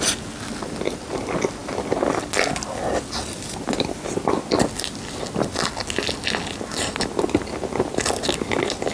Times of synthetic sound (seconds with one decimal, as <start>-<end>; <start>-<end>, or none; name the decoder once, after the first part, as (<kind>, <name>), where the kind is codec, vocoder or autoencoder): 3.2-4.4 (vocoder, BigVGAN v2)